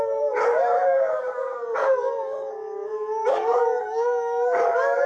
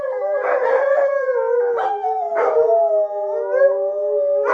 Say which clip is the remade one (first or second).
first